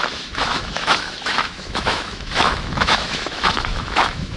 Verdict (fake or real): fake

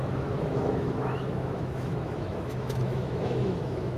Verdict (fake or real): fake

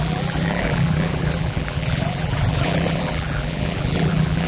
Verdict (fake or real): fake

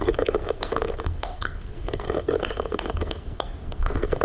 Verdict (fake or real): fake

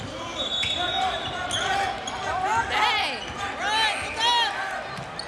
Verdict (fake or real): real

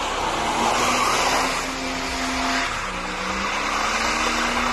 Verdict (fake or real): real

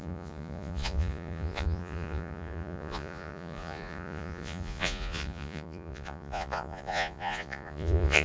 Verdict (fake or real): fake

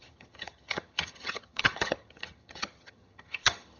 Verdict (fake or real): fake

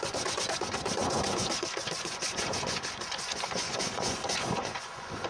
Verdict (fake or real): fake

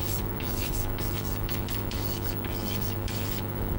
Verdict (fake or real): fake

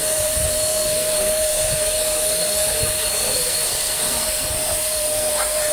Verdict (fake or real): fake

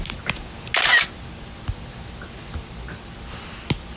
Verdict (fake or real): real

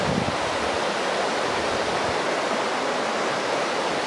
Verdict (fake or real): real